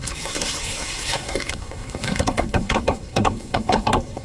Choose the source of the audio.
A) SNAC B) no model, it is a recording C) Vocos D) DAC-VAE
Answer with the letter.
A